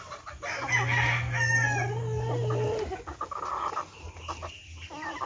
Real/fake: real